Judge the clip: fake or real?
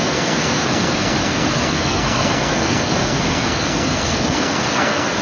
fake